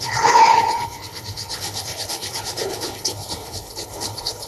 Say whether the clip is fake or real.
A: fake